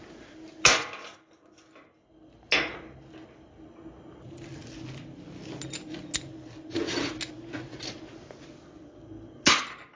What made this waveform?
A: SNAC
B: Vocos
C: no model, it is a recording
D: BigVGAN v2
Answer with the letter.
C